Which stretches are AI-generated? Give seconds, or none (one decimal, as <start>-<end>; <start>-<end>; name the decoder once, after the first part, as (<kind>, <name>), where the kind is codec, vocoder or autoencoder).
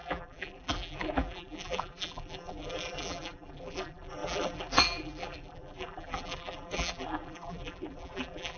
0.0-8.6 (vocoder, BigVGAN v2)